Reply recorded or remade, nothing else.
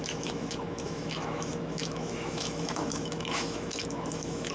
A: remade